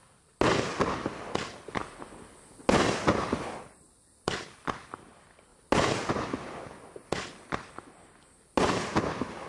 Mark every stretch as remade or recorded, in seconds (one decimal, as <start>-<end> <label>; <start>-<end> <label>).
0.0-9.5 recorded